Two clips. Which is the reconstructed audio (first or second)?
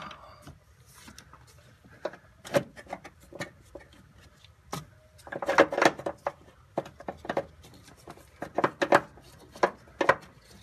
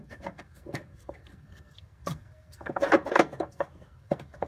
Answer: second